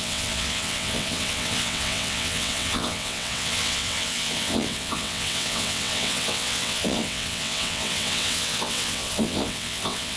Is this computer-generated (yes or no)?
yes